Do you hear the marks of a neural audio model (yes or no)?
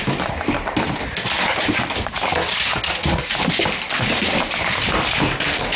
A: no